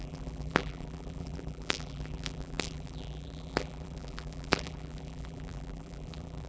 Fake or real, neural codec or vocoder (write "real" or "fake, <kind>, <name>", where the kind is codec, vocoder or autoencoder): fake, vocoder, BigVGAN v2